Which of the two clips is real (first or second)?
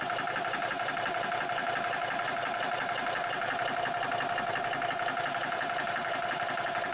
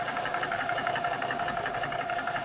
first